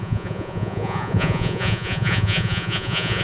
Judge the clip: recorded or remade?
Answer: remade